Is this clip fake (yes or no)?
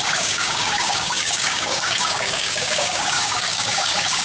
yes